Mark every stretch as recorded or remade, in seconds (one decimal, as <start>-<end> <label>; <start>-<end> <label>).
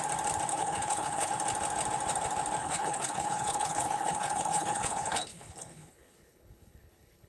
0.0-0.5 recorded; 0.5-1.3 remade; 1.3-2.6 recorded; 2.6-7.3 remade